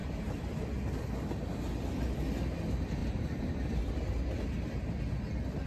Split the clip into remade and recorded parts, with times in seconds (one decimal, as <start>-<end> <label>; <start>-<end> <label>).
0.0-0.6 remade; 0.6-3.0 recorded; 3.0-3.9 remade; 3.9-5.7 recorded